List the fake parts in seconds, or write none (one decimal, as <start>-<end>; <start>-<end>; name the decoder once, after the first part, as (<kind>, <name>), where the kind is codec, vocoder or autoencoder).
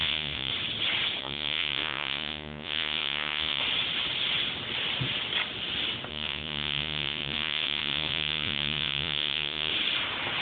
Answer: 0.0-0.5 (vocoder, Vocos); 1.2-3.6; 6.1-9.7